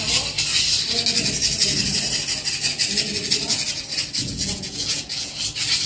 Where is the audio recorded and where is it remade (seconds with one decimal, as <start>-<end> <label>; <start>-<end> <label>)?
0.0-4.2 recorded; 4.2-5.3 remade; 5.3-5.9 recorded